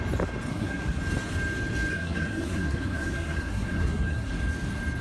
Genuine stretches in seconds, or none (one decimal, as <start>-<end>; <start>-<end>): 0.0-0.5; 1.0-1.9; 4.3-5.0